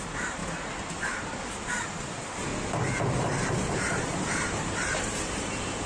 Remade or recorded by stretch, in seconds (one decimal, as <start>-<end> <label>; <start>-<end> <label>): 0.0-0.4 remade; 0.4-0.9 recorded; 0.9-2.5 remade; 2.5-3.5 recorded; 3.5-5.9 remade